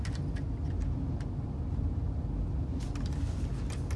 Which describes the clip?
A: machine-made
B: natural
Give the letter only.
B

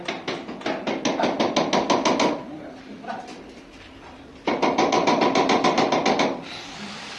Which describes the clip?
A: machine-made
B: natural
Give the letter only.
B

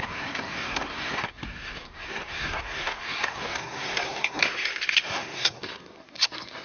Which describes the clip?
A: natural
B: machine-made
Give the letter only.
B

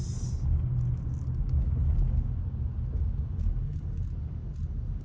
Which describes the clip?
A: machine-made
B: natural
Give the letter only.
B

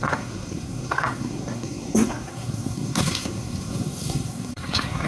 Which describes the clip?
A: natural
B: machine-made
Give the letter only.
B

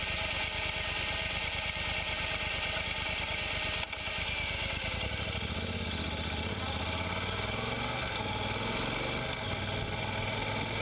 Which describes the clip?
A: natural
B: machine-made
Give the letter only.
A